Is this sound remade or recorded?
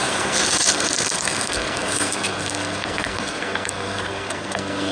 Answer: remade